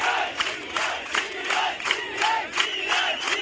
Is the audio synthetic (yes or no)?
yes